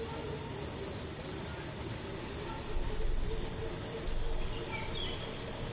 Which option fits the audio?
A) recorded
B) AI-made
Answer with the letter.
A